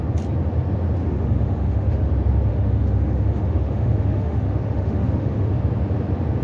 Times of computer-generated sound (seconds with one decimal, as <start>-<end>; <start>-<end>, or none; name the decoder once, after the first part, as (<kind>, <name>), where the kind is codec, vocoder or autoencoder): 1.0-2.1 (autoencoder, DAC-VAE); 2.5-5.5